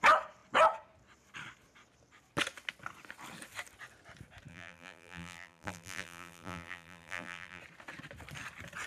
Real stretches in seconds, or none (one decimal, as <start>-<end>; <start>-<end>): 0.0-4.5; 7.6-8.9